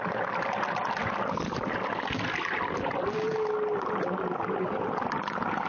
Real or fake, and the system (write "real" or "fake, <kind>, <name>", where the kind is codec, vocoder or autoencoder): real